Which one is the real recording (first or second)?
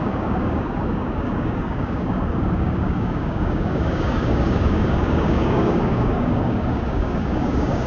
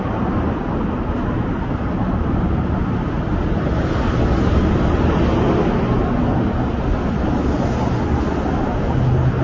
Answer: second